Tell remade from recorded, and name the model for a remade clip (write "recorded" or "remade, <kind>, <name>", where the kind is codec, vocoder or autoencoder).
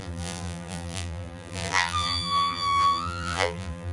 remade, vocoder, BigVGAN v2